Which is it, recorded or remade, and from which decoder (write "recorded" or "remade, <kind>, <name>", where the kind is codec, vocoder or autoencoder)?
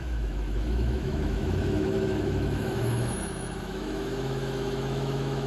remade, autoencoder, DAC-VAE